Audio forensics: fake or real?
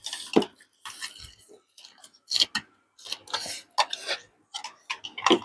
real